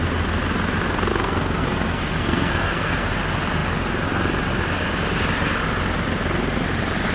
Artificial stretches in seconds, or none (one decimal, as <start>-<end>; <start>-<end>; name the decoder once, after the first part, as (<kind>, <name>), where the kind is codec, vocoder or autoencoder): 1.1-3.1 (codec, SNAC)